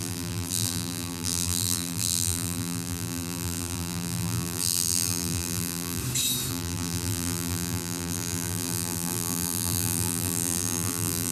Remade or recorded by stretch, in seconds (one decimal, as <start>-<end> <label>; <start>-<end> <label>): 0.0-6.0 remade; 6.0-6.5 recorded; 6.5-11.3 remade